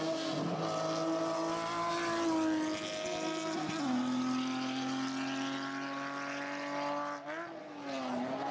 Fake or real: real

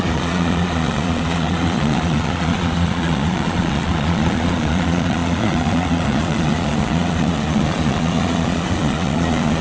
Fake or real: fake